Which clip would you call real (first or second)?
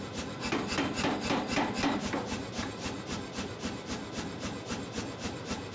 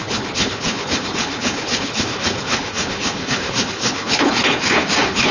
first